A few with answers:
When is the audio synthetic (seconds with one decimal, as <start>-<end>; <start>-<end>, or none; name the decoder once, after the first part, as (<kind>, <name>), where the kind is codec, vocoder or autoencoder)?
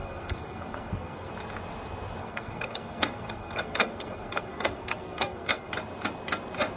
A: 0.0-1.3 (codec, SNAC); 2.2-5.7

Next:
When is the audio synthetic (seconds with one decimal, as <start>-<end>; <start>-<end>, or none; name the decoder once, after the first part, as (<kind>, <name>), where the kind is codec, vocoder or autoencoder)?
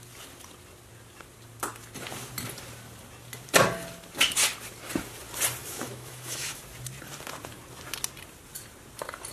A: 5.6-6.6 (autoencoder, DAC-VAE)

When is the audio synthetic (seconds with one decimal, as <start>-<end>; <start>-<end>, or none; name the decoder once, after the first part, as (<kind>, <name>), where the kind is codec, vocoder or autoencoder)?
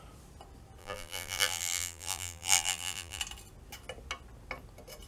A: 0.8-3.2 (vocoder, BigVGAN v2)